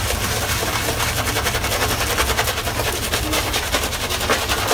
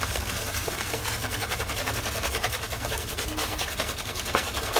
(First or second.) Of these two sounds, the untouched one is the first